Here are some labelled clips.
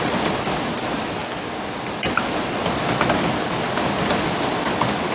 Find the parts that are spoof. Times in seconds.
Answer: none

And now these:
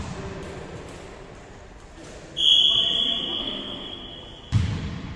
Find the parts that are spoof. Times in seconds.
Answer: 3.4-4.0 (codec, SNAC)

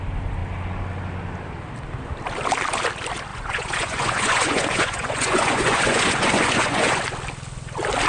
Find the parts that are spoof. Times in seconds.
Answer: 3.3-7.0 (vocoder, Vocos)

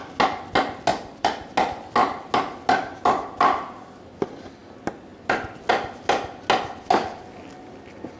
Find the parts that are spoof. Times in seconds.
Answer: 0.9-1.5 (vocoder, BigVGAN v2)

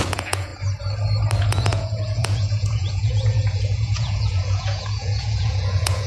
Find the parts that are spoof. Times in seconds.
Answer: 0.0-0.5 (vocoder, Vocos); 1.4-6.1

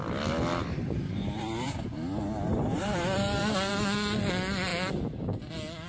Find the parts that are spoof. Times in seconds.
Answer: 0.5-1.9 (vocoder, BigVGAN v2); 2.5-3.7

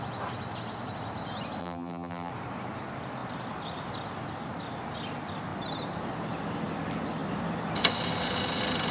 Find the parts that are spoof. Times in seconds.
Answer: 1.6-2.3 (vocoder, BigVGAN v2)

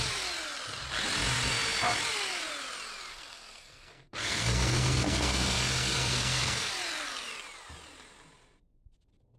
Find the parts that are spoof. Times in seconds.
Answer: 3.1-6.7 (codec, SNAC)